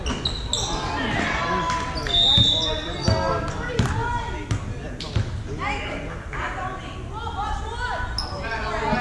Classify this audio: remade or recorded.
recorded